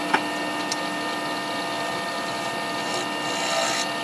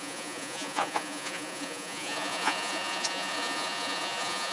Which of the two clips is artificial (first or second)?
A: second